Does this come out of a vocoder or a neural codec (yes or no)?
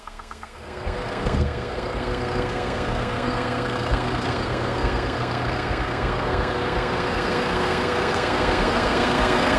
yes